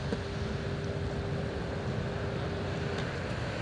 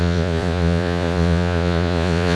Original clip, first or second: first